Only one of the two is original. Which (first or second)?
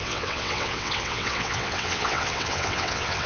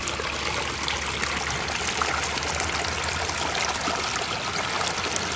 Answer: second